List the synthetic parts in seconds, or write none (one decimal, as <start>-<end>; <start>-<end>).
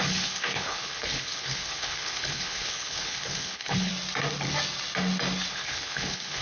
0.0-3.9; 5.5-6.4